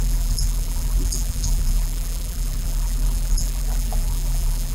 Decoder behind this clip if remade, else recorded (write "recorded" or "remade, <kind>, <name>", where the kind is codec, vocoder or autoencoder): remade, vocoder, BigVGAN v2